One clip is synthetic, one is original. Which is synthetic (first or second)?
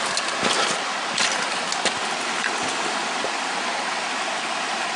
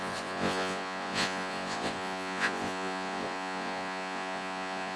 second